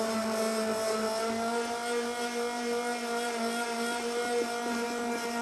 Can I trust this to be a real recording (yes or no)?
yes